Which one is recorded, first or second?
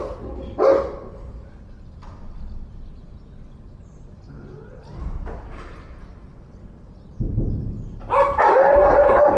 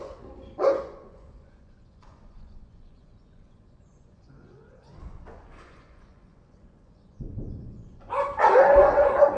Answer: first